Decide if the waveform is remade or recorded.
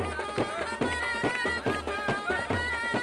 recorded